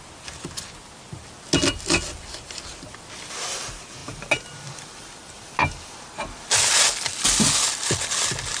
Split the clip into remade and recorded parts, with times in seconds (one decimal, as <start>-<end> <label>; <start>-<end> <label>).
0.0-8.6 recorded